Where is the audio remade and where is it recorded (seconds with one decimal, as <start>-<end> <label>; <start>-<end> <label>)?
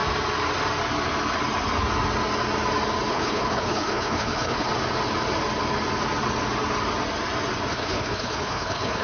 0.0-3.1 recorded; 3.1-4.7 remade; 4.7-7.7 recorded; 7.7-9.0 remade